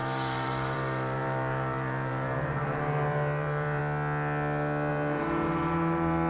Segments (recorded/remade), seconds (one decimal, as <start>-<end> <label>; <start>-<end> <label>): 0.0-3.8 remade; 3.8-4.9 recorded; 4.9-6.3 remade